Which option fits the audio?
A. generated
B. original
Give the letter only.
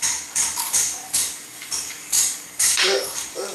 A